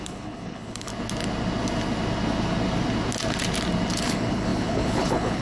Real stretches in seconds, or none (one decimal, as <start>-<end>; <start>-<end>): 0.9-4.0